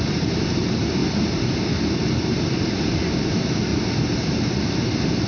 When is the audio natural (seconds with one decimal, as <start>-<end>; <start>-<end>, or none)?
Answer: 1.0-2.0; 3.7-4.2